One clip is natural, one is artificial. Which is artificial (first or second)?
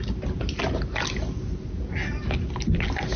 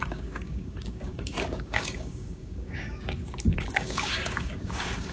second